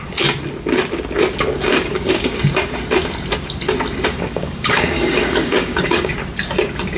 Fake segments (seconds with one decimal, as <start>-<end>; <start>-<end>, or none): 1.7-2.4; 4.1-6.1